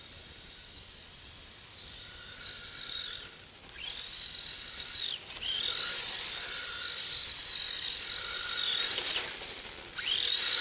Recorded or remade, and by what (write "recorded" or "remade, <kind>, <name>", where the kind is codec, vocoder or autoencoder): recorded